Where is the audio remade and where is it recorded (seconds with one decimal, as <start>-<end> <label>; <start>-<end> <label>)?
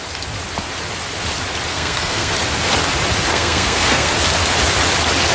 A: 0.0-1.7 recorded; 1.7-2.3 remade; 2.3-3.3 recorded; 3.3-4.1 remade; 4.1-5.3 recorded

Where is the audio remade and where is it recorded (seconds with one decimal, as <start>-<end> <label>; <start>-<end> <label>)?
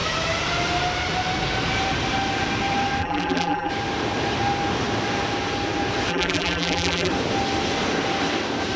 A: 0.0-3.0 recorded; 3.0-3.7 remade; 3.7-6.1 recorded; 6.1-7.1 remade; 7.1-8.8 recorded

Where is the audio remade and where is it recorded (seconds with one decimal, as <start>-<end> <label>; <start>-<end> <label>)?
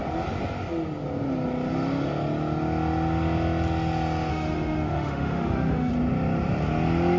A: 0.0-4.3 recorded; 4.3-5.9 remade; 5.9-7.2 recorded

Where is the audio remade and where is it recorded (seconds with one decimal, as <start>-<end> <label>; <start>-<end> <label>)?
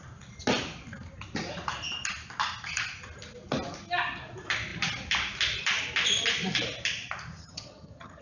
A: 0.0-7.4 recorded; 7.4-8.2 remade